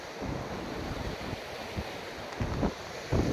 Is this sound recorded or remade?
recorded